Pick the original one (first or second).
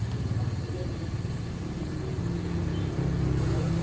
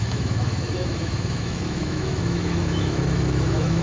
first